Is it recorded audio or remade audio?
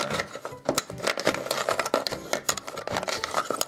recorded